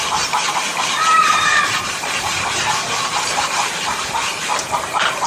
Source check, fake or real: fake